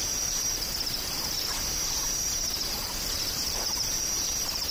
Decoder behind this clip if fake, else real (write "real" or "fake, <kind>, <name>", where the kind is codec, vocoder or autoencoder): fake, vocoder, BigVGAN v2